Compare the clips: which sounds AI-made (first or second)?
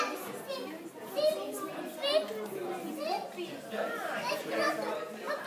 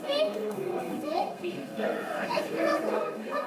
second